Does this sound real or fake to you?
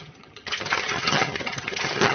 fake